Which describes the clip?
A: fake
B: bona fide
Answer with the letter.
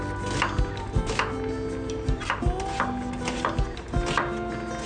B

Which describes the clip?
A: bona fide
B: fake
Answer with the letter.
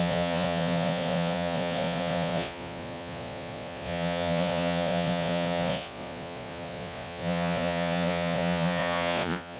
B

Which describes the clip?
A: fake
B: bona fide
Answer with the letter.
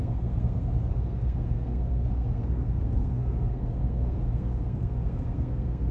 A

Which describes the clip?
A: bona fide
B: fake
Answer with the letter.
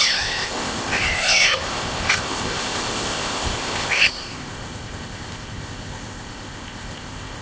B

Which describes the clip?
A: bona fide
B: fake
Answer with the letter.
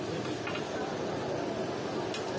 A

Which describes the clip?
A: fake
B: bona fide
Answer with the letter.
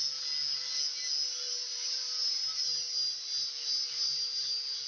B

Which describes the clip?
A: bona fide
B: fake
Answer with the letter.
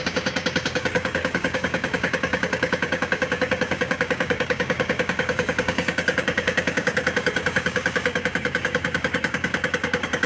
B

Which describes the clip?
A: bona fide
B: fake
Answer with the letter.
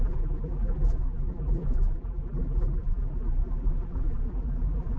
B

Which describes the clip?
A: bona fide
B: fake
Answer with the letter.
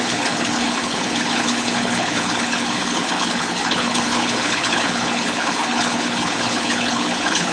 B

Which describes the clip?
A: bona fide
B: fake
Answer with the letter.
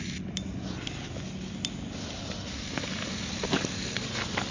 A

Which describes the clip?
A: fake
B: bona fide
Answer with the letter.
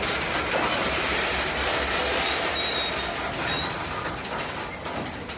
B